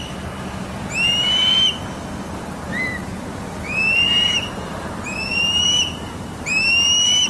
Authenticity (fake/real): fake